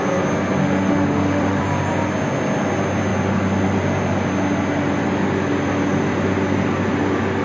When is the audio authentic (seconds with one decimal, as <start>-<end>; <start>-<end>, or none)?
0.0-0.6; 1.6-7.4